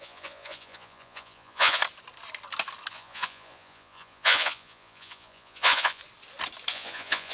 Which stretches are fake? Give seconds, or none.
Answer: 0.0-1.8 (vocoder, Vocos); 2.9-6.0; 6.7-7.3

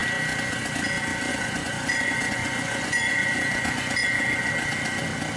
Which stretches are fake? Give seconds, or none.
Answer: 1.3-4.5 (vocoder, Vocos)